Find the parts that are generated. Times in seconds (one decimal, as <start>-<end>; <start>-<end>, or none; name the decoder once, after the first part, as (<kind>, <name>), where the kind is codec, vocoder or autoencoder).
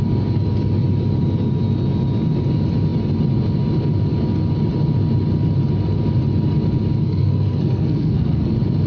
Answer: 7.0-8.5 (codec, SNAC)